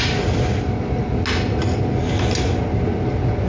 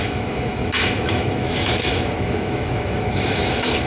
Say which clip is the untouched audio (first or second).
first